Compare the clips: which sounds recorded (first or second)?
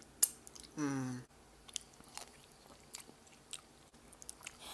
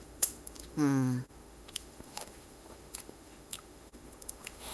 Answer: first